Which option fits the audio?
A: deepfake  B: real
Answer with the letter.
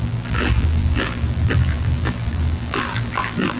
A